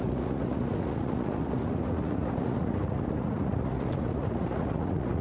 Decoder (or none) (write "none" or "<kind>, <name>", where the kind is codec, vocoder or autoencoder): vocoder, Vocos